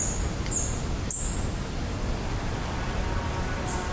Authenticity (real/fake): real